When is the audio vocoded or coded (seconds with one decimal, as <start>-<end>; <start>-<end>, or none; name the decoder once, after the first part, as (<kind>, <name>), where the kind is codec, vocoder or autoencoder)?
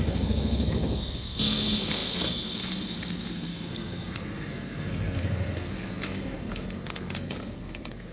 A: 0.0-8.1 (codec, SNAC)